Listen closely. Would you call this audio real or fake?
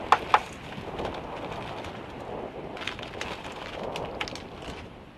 real